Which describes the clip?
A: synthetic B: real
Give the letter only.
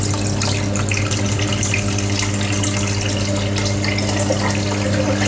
B